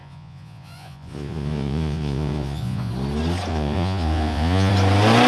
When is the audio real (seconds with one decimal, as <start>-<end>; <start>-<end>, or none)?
2.9-3.5; 4.7-5.3